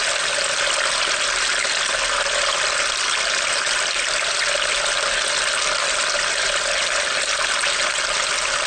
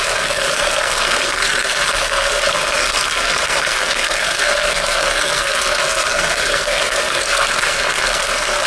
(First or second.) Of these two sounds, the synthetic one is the second